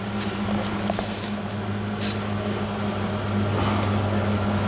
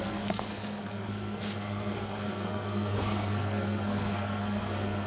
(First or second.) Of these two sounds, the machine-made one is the second